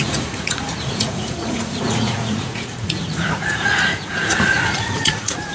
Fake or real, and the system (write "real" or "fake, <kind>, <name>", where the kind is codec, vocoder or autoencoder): fake, vocoder, Vocos